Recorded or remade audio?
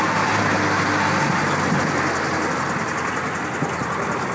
recorded